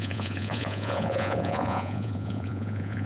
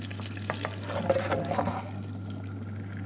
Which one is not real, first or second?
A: first